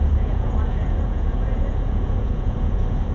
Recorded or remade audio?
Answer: remade